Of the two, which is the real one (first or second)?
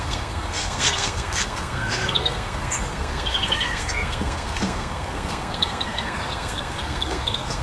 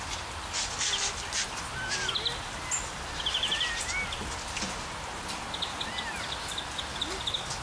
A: second